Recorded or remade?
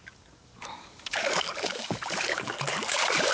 remade